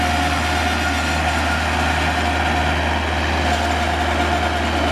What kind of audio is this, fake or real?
real